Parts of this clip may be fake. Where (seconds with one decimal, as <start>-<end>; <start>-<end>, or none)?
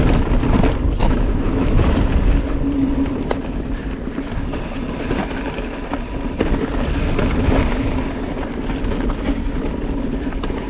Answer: 1.0-1.8